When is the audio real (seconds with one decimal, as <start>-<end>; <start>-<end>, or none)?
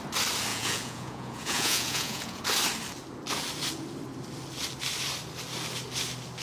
0.0-0.5; 2.4-6.4